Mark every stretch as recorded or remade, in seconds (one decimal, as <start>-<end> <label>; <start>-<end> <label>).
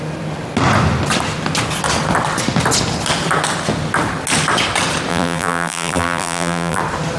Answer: 0.0-5.1 recorded; 5.1-6.8 remade; 6.8-7.2 recorded